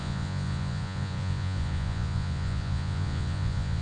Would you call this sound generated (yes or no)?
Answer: yes